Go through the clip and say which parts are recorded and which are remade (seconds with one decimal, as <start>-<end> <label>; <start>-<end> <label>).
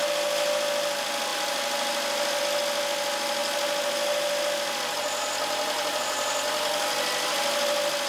0.0-8.1 recorded